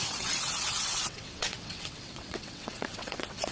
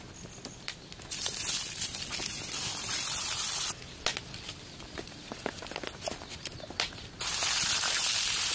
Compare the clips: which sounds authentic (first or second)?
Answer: second